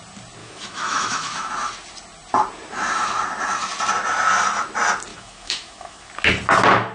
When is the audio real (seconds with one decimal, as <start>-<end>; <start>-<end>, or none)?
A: 0.0-0.4; 1.5-5.1; 6.1-6.9